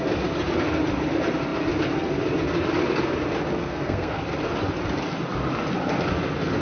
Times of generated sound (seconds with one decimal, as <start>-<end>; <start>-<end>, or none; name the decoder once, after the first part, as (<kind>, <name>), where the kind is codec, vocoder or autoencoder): 3.6-4.2 (codec, SNAC)